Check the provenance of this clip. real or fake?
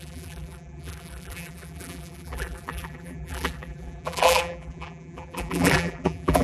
fake